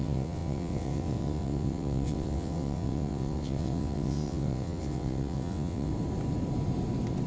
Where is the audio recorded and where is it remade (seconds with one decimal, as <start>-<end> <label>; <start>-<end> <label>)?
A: 0.0-5.9 remade; 5.9-7.3 recorded